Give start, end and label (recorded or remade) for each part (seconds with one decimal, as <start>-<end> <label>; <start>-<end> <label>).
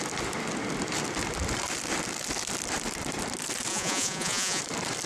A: 0.0-3.7 recorded; 3.7-4.6 remade; 4.6-5.1 recorded